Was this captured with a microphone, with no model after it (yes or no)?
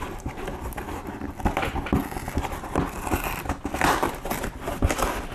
yes